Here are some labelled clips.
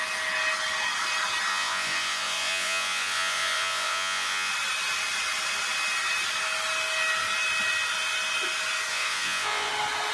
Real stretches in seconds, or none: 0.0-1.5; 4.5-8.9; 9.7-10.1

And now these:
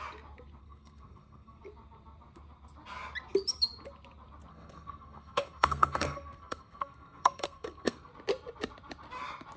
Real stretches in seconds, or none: 0.0-0.6; 1.6-4.5; 8.1-9.6

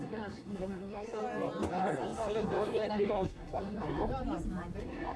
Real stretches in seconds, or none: 1.2-1.7; 4.1-4.8